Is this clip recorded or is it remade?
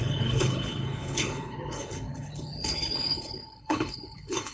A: remade